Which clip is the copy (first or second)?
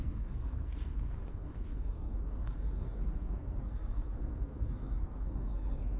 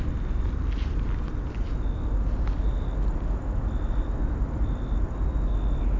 first